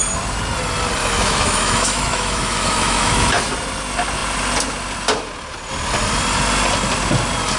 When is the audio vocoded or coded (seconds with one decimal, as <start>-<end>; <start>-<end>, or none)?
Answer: 1.0-3.4